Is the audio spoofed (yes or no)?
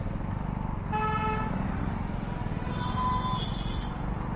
no